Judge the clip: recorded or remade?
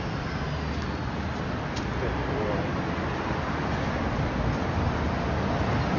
recorded